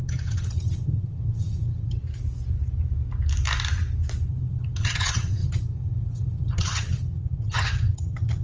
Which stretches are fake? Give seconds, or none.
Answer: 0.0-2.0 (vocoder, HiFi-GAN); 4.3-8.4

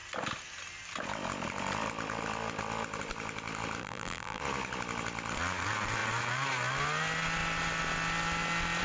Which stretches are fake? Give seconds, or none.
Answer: 3.8-4.4 (vocoder, BigVGAN v2)

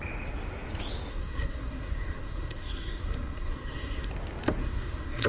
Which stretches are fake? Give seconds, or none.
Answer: 1.1-4.1 (codec, SNAC); 4.6-5.3

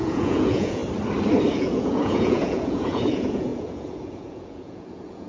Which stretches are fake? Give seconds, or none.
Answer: 0.0-0.8 (vocoder, Vocos); 1.5-5.3

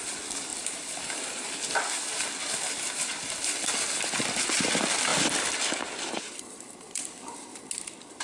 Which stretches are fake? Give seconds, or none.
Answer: 0.5-1.1 (vocoder, BigVGAN v2); 5.1-7.7